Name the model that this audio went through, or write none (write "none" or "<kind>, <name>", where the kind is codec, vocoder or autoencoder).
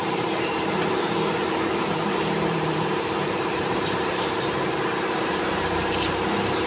vocoder, BigVGAN v2